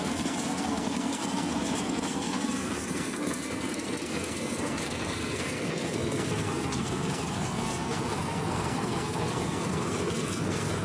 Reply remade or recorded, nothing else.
remade